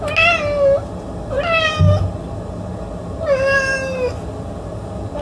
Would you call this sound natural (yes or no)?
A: yes